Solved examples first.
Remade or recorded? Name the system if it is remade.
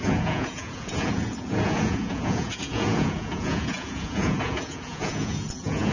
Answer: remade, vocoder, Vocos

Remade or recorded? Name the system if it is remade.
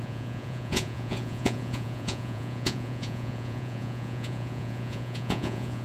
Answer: remade, vocoder, Vocos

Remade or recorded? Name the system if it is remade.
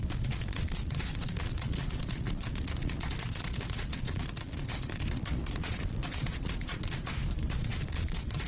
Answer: remade, vocoder, Vocos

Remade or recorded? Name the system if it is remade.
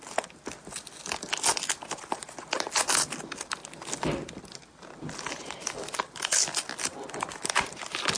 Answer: recorded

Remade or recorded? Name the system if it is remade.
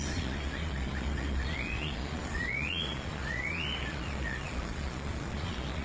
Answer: remade, vocoder, Vocos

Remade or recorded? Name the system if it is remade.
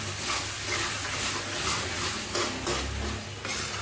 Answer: recorded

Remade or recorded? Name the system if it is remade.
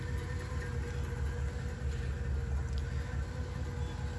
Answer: recorded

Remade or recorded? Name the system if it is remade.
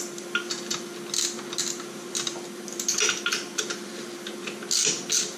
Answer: recorded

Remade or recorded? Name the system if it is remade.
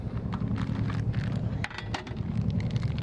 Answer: recorded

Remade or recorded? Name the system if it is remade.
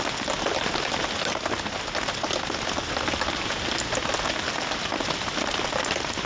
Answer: recorded